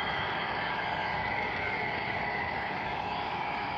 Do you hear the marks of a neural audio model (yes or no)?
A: yes